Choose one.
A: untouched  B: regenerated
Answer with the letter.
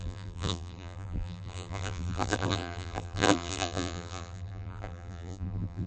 B